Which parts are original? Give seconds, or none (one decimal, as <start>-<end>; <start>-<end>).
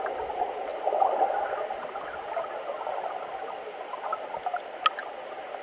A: 0.0-5.6